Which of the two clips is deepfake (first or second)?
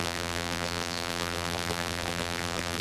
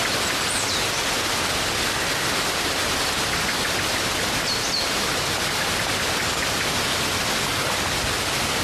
first